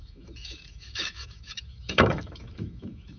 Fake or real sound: fake